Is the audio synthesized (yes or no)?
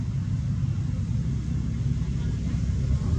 no